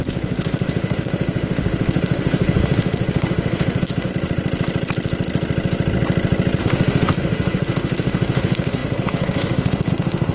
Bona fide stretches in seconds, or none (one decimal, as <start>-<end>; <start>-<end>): 4.1-6.6